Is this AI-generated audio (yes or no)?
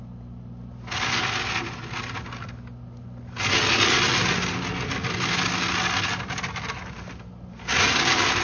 no